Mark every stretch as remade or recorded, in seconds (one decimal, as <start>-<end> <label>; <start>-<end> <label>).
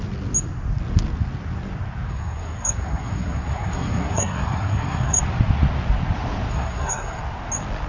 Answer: 0.0-2.1 recorded; 2.1-5.2 remade; 5.2-6.5 recorded; 6.5-7.2 remade; 7.2-7.9 recorded